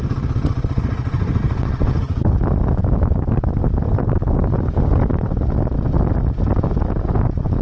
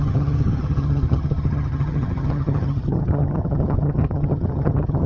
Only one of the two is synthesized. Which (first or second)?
second